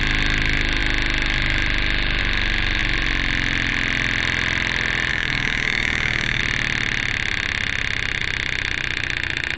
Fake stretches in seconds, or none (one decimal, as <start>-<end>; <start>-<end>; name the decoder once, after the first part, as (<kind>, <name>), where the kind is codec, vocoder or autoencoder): 5.1-6.4 (codec, DAC)